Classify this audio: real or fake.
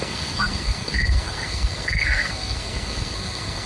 fake